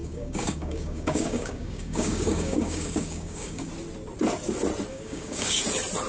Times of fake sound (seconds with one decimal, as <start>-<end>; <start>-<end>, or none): 0.0-3.7; 4.9-5.6